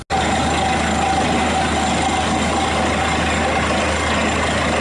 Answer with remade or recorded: recorded